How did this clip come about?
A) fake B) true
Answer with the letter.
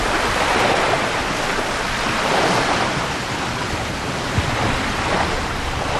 B